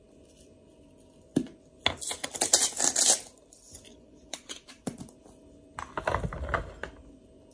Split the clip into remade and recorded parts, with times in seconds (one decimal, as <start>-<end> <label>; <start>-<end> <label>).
0.0-3.9 recorded; 3.9-5.0 remade; 5.0-7.5 recorded